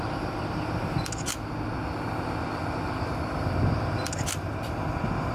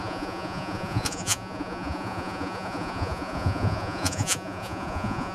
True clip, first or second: first